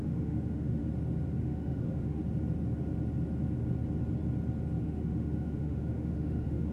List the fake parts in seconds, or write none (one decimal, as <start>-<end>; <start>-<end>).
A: 0.0-0.8; 1.4-2.2; 4.8-6.7